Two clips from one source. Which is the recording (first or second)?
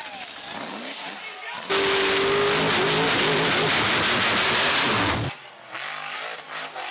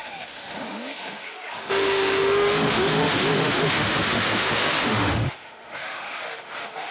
first